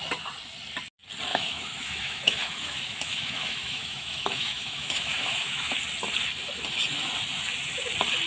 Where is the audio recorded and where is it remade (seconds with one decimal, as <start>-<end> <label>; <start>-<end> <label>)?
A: 0.0-1.3 recorded; 1.3-5.8 remade; 5.8-8.3 recorded